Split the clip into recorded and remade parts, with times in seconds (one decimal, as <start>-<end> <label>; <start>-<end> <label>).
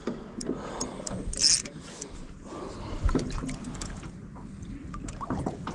0.0-2.2 recorded; 2.2-3.4 remade; 3.4-5.7 recorded